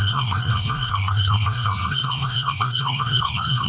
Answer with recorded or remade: remade